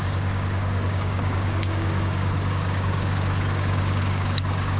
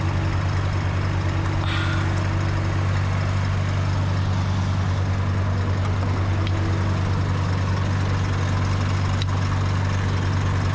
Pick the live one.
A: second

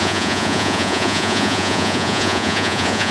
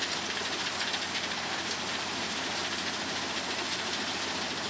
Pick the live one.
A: second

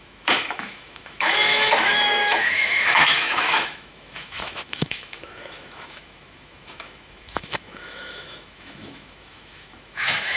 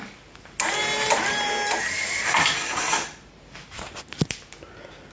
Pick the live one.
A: second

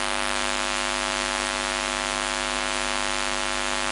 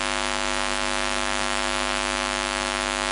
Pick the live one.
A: first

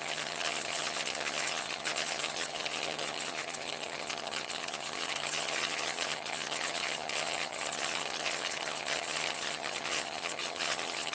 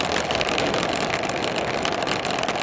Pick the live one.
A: second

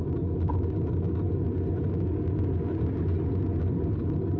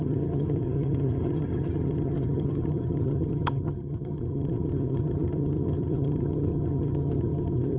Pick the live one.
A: first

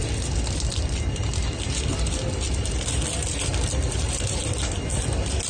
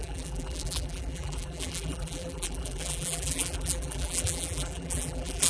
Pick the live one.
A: first